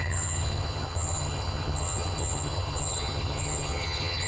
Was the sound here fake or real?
fake